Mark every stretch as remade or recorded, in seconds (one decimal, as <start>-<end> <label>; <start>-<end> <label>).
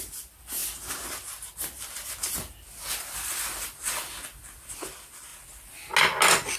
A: 0.0-6.6 recorded